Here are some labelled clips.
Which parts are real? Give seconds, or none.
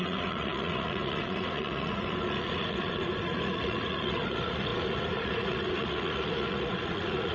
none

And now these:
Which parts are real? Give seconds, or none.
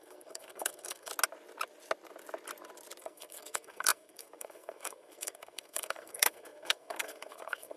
1.1-3.0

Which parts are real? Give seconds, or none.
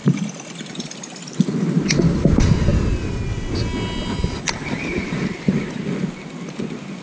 0.0-7.0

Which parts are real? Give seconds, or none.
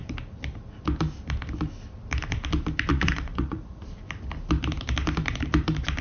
0.0-2.9; 3.8-6.0